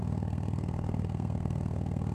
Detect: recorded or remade remade